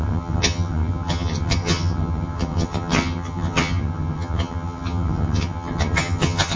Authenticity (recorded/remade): remade